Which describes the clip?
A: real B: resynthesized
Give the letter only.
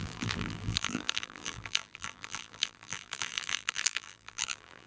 B